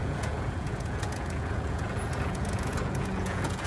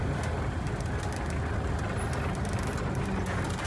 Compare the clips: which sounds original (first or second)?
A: second